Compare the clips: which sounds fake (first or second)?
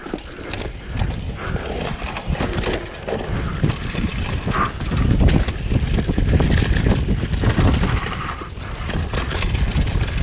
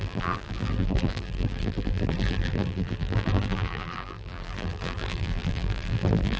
second